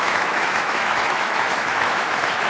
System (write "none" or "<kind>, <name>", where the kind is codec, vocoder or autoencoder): autoencoder, DAC-VAE